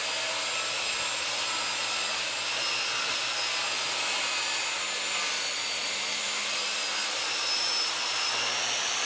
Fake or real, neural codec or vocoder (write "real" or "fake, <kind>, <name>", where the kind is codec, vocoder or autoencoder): real